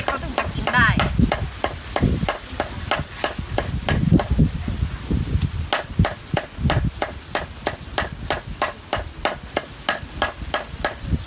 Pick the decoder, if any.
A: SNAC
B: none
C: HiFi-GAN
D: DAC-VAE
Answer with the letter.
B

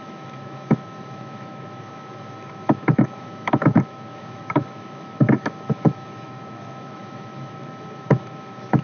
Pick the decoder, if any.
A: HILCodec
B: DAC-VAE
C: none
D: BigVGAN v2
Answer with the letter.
B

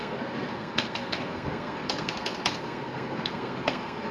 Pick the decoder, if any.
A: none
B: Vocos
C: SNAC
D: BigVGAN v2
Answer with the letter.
C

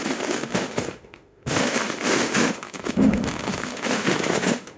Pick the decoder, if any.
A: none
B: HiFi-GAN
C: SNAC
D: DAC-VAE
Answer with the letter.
D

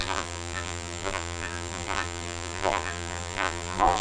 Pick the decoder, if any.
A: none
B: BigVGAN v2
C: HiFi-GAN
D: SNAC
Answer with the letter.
B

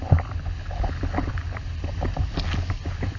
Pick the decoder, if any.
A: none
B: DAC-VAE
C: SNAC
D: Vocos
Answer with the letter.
A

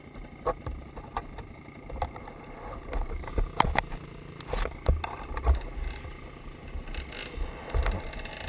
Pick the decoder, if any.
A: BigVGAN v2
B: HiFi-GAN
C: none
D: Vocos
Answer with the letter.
C